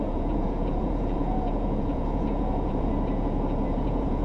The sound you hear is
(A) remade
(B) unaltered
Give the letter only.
A